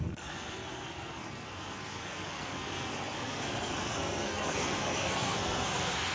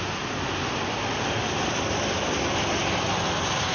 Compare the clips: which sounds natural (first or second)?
second